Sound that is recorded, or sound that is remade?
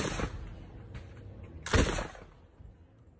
recorded